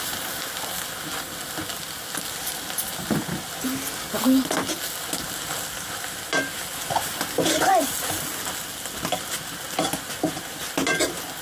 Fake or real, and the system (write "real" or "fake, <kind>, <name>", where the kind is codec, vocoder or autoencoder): real